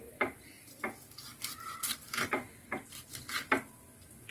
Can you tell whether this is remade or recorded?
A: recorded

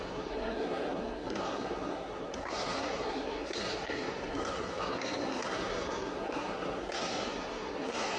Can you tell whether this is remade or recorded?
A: remade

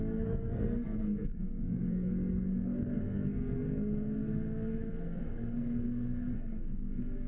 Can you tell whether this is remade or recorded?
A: remade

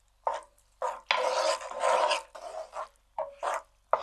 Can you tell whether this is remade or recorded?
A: recorded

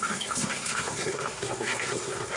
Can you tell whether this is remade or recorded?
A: remade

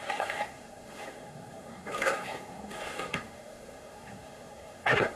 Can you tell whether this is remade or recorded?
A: remade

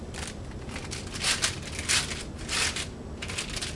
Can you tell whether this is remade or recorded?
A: recorded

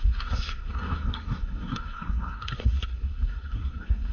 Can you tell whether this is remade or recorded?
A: remade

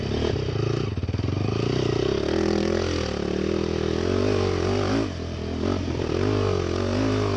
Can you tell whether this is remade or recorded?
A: recorded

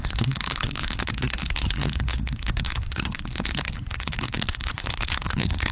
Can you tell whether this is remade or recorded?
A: remade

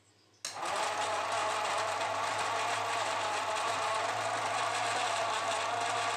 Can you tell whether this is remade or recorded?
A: recorded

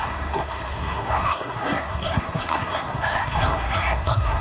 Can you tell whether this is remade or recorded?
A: remade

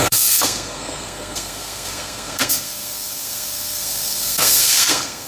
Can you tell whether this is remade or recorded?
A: remade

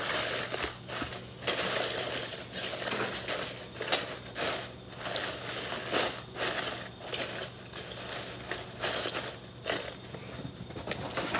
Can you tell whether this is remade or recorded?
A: recorded